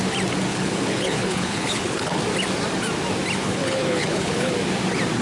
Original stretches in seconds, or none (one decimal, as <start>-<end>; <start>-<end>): 0.0-0.5; 2.2-3.4; 4.5-5.2